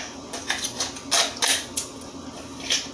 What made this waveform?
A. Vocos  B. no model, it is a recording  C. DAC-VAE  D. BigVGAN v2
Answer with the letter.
B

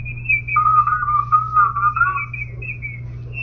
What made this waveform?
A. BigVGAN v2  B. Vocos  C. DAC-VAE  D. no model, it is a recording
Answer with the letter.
D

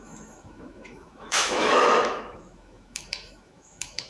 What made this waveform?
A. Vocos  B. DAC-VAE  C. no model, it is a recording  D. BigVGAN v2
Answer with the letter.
B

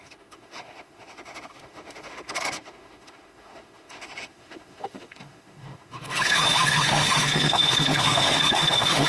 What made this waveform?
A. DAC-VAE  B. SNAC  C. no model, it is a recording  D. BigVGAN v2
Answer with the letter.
A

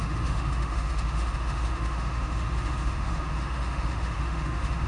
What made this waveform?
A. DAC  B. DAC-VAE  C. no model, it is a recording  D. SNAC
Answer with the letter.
B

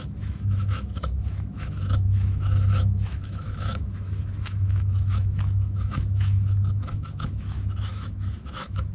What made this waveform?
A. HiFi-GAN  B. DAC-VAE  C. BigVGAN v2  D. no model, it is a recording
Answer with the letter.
B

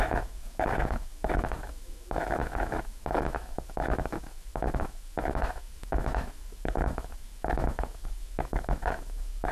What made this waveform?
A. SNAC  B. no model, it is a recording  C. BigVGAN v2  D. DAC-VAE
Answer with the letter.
D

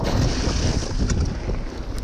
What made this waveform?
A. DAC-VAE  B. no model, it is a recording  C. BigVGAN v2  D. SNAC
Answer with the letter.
B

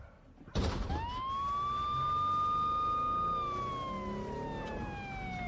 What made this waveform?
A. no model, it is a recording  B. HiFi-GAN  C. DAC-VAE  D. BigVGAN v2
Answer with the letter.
A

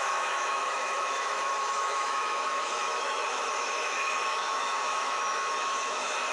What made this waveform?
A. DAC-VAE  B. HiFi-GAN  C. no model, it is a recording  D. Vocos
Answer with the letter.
A